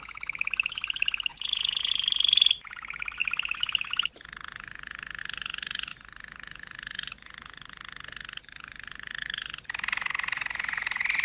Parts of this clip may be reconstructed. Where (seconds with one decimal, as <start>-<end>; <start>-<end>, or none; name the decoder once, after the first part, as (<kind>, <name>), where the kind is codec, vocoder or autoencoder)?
1.3-1.9 (vocoder, Vocos)